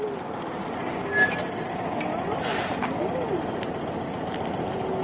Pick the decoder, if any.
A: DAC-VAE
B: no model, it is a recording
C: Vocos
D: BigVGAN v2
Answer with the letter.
B